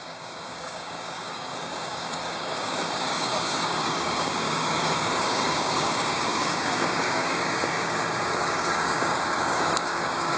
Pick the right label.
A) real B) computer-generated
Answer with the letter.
B